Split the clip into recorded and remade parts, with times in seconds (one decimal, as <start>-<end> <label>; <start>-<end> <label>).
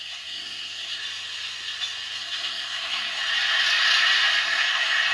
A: 0.0-1.0 remade; 1.0-2.2 recorded; 2.2-3.2 remade; 3.2-4.4 recorded; 4.4-5.1 remade